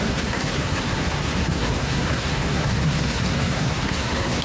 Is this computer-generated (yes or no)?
yes